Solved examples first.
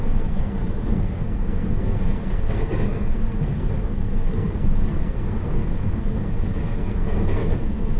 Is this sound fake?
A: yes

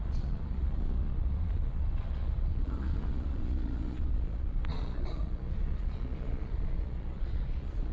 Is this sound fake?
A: yes